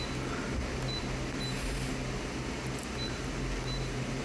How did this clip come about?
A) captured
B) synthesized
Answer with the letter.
A